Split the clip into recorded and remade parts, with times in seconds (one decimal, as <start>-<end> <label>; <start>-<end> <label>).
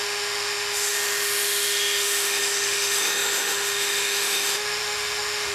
0.0-5.5 remade